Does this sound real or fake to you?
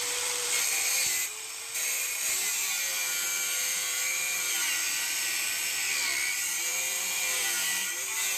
fake